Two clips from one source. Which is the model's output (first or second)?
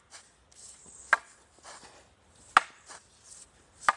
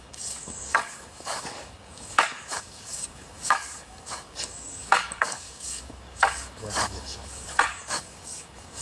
second